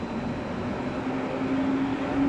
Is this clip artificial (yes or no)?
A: no